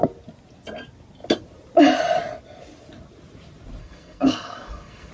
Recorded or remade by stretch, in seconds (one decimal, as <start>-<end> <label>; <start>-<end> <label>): 0.0-3.8 recorded; 3.8-5.1 remade